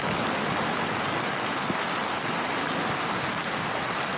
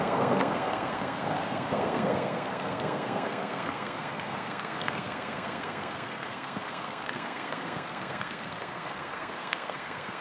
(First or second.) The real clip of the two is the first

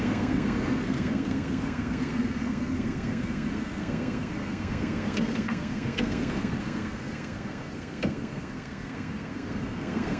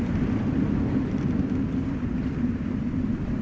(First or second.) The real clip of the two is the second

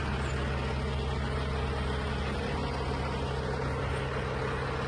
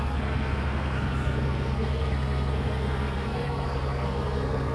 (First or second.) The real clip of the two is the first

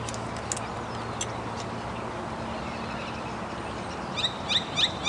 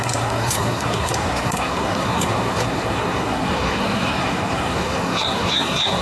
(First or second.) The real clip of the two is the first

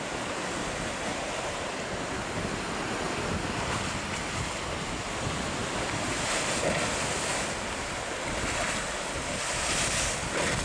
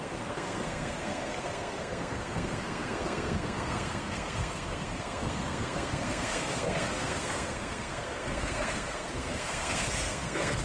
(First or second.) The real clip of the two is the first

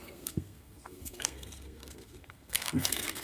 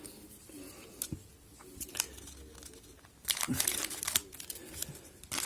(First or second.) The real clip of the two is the second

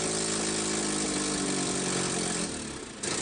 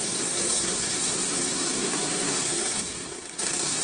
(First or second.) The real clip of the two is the first